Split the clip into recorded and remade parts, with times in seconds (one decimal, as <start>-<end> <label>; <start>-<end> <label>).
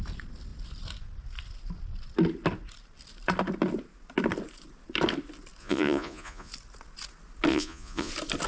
0.0-5.6 recorded; 5.6-6.5 remade; 6.5-7.5 recorded; 7.5-8.1 remade; 8.1-8.5 recorded